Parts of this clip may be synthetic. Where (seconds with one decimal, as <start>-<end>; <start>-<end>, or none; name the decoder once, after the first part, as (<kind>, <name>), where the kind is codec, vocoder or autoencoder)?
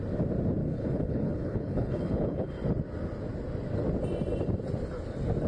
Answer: 0.6-2.5 (codec, HILCodec)